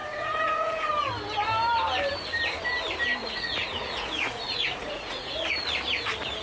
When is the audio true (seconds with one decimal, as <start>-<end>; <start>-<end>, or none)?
0.9-3.2; 5.3-6.4